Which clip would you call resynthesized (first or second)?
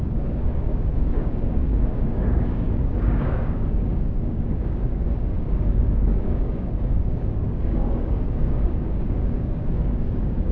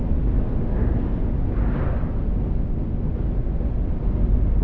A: first